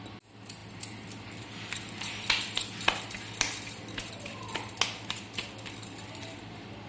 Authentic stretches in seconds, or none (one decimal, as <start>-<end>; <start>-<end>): 0.0-6.9